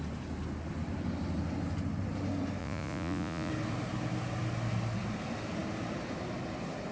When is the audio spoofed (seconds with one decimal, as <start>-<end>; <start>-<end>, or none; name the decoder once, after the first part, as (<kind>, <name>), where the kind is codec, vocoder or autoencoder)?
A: 2.6-3.5 (vocoder, Vocos)